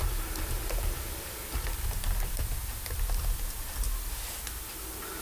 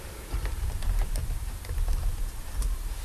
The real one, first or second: first